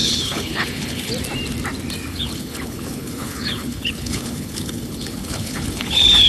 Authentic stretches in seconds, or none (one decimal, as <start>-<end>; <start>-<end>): 1.1-2.1